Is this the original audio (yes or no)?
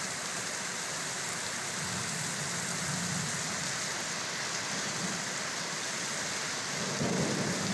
yes